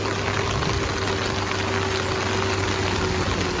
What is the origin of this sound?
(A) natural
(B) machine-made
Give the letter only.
A